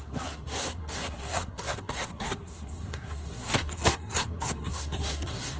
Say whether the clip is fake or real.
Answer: fake